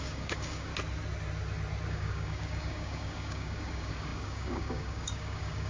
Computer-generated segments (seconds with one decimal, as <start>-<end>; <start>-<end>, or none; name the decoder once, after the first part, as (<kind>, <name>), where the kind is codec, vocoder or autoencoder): 0.0-0.7 (codec, DAC); 1.9-5.7